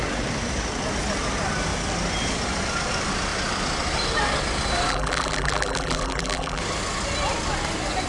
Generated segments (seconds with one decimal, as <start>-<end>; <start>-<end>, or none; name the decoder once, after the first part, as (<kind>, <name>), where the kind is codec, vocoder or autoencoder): 4.9-6.6 (vocoder, BigVGAN v2)